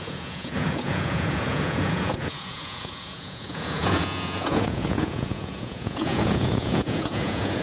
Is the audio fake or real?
fake